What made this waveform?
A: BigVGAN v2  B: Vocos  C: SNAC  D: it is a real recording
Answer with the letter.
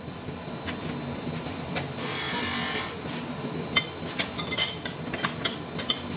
D